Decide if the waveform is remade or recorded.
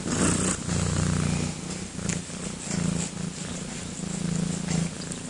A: recorded